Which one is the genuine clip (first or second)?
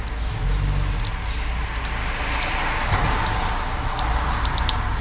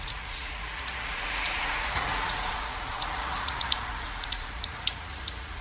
first